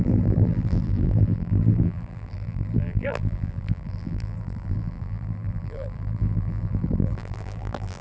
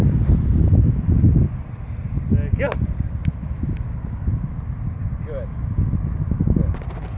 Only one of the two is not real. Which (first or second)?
first